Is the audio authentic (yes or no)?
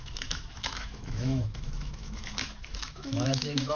no